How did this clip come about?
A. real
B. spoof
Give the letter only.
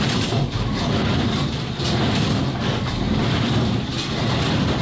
A